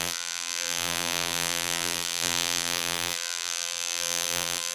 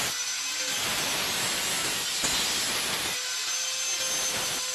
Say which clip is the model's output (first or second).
first